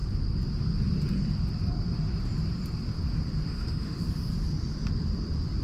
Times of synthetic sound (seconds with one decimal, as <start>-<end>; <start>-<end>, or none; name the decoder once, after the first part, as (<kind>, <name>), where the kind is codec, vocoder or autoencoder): 3.4-4.3 (autoencoder, DAC-VAE)